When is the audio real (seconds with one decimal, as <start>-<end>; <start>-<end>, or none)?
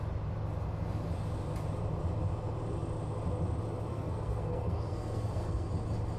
0.0-3.9; 5.7-6.2